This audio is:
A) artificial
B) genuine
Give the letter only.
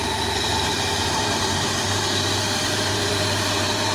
A